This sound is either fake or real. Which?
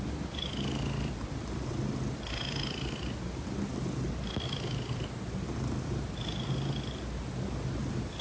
real